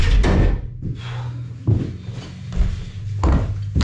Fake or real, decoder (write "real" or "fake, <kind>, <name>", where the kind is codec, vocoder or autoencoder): real